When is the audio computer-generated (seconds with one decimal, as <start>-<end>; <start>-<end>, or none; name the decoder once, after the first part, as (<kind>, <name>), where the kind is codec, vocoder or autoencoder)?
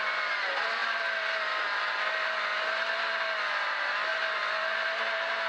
none